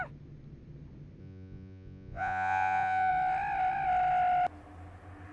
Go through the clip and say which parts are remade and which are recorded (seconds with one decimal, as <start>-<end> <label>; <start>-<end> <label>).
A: 0.0-1.2 recorded; 1.2-3.1 remade; 3.1-5.3 recorded